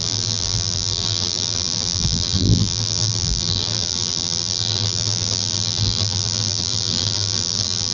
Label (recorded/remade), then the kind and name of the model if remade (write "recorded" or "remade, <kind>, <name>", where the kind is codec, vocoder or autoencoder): remade, vocoder, BigVGAN v2